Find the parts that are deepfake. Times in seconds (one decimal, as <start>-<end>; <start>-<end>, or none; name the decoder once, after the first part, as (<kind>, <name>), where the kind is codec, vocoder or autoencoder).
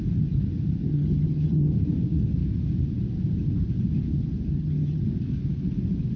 0.9-1.7 (vocoder, HiFi-GAN); 4.5-5.0